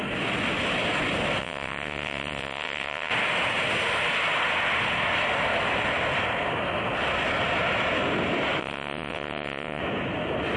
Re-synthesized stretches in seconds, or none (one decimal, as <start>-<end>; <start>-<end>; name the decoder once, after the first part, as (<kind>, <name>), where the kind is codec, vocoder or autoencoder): 1.4-3.1 (vocoder, WaveNeXt); 8.6-9.8